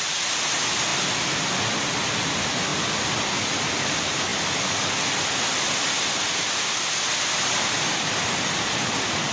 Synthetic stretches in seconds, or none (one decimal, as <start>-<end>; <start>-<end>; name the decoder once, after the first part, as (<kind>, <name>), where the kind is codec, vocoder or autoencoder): none